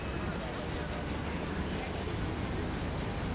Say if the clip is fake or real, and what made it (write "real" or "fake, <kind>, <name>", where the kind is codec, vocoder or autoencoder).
real